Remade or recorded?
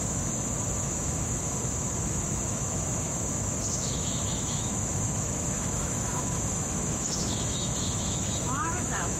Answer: remade